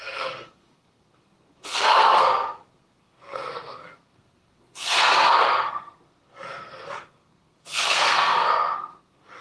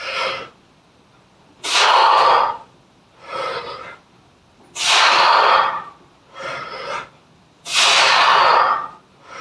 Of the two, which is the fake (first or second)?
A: first